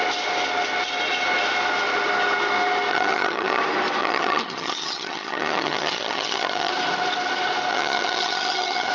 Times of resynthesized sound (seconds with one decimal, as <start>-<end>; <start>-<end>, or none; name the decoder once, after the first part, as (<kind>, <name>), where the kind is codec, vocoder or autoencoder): 2.9-3.6 (vocoder, HiFi-GAN); 4.0-6.7; 7.7-8.9